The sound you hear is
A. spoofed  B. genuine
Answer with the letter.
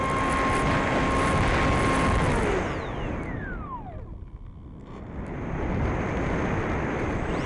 B